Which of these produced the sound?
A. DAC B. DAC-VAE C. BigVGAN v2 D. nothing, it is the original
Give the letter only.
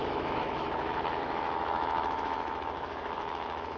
B